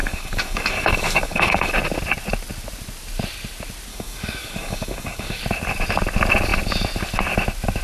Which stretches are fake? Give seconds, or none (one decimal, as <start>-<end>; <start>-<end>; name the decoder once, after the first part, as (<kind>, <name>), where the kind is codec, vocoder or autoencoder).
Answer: 0.0-1.7 (codec, DAC); 3.9-5.4